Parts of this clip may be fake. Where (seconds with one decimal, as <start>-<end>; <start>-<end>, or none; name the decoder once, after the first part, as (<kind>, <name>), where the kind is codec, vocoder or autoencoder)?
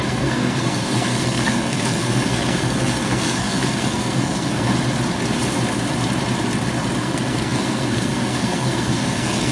0.0-4.7 (codec, SNAC); 7.0-9.5